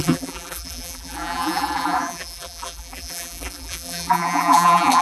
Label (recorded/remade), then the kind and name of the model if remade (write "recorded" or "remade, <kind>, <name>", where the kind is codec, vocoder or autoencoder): remade, vocoder, BigVGAN v2